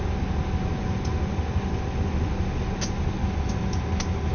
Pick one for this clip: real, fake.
real